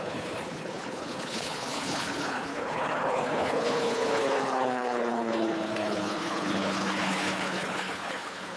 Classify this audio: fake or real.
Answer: fake